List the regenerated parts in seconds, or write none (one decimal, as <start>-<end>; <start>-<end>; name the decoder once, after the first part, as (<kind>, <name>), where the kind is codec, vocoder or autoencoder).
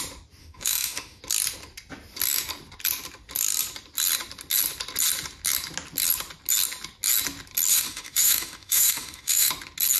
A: 0.4-1.2 (autoencoder, DAC-VAE); 7.7-9.5